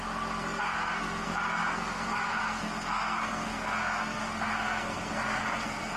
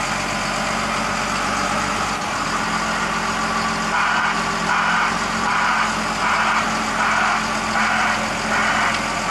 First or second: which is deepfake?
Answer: first